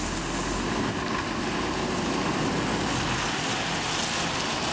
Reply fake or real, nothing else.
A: real